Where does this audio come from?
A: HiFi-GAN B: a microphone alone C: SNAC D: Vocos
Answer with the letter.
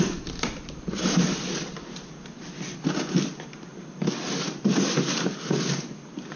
B